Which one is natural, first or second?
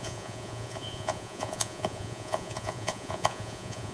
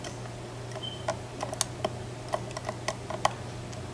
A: second